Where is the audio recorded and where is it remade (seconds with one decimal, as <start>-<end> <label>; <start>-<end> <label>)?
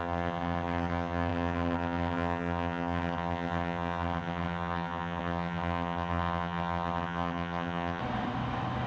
0.0-8.0 remade; 8.0-8.9 recorded